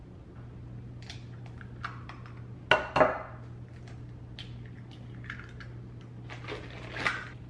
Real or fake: real